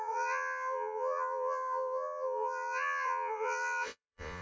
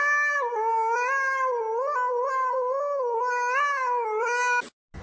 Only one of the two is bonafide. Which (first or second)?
second